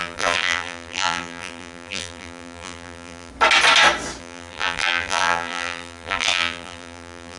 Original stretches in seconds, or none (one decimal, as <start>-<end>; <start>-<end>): 3.3-4.2